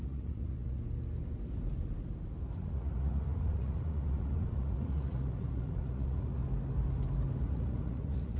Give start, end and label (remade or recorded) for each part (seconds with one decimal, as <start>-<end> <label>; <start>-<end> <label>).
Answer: 0.0-0.8 remade; 0.8-2.6 recorded; 2.6-6.4 remade; 6.4-7.4 recorded; 7.4-8.4 remade